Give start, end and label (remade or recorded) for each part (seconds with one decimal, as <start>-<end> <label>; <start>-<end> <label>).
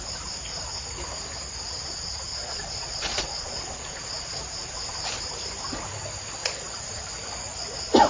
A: 0.0-2.3 recorded; 2.3-4.0 remade; 4.0-6.4 recorded; 6.4-7.0 remade; 7.0-8.1 recorded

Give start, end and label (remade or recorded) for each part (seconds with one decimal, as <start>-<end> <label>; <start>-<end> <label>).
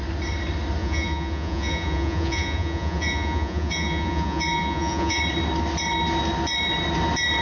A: 0.0-0.8 recorded; 0.8-5.2 remade; 5.2-7.4 recorded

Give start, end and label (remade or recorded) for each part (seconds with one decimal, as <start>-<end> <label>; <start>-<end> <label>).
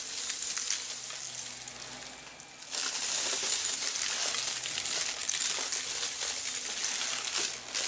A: 0.0-7.9 recorded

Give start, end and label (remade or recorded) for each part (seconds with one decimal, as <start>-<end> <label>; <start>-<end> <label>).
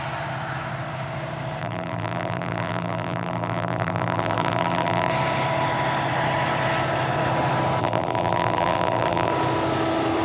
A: 0.0-1.6 recorded; 1.6-5.1 remade; 5.1-7.8 recorded; 7.8-9.3 remade; 9.3-10.2 recorded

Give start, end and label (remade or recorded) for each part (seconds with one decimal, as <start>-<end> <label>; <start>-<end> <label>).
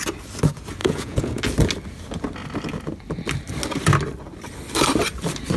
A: 0.0-0.8 recorded; 0.8-1.4 remade; 1.4-5.6 recorded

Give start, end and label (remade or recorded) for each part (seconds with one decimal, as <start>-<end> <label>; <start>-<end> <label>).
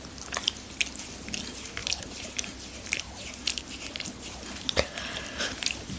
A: 0.0-6.0 recorded